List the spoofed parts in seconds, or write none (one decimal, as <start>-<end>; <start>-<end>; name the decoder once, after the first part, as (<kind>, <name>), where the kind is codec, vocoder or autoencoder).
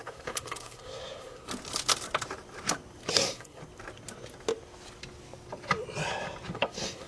0.0-1.5 (codec, SNAC); 3.1-3.6; 6.5-7.1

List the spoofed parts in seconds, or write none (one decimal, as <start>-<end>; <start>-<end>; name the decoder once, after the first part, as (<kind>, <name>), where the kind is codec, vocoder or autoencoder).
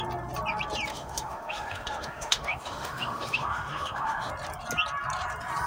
0.9-4.3 (autoencoder, DAC-VAE)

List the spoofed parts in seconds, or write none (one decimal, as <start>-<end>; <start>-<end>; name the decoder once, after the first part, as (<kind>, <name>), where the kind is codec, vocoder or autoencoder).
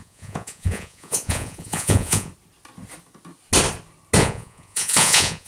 0.0-2.3 (vocoder, Vocos); 4.2-5.5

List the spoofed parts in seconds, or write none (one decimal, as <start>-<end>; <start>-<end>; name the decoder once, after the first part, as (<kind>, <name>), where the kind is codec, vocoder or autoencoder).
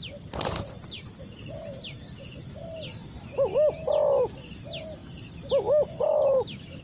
none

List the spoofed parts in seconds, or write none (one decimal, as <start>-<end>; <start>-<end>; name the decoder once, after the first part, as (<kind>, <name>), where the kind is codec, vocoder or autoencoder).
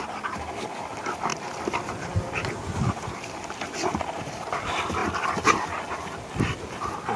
none